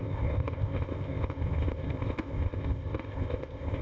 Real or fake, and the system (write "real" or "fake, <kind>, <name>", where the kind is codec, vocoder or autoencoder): fake, codec, ZipCodec